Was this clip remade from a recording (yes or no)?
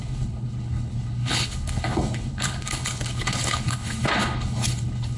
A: yes